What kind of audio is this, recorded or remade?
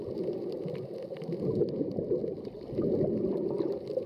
recorded